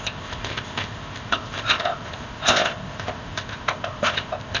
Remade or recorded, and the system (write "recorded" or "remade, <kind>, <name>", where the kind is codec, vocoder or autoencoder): remade, codec, ZipCodec